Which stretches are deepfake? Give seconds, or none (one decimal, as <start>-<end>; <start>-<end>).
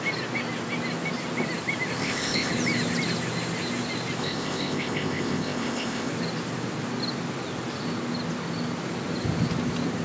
2.0-2.5; 4.2-6.1